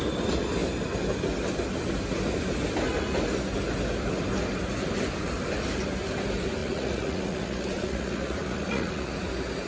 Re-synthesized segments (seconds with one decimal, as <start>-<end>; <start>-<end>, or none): 6.6-9.1